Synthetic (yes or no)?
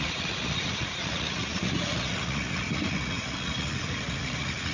yes